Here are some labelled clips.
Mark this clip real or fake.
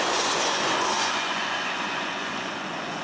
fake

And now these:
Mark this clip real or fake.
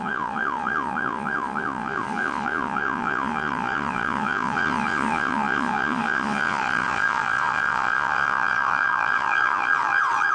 fake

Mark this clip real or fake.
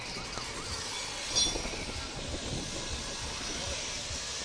real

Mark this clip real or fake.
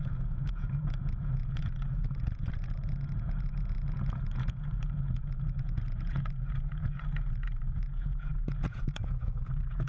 fake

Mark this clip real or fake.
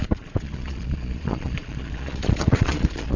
fake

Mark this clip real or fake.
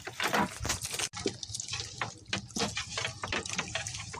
real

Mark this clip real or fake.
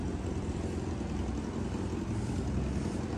real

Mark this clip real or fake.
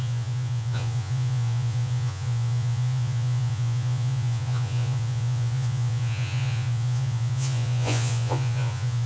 fake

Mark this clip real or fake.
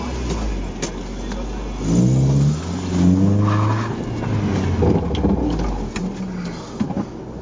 real